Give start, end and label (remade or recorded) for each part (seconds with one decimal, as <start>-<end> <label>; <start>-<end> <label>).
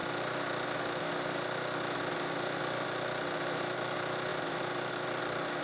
0.0-5.6 recorded